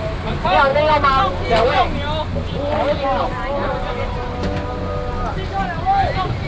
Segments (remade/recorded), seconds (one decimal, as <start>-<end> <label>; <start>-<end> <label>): 0.0-6.5 recorded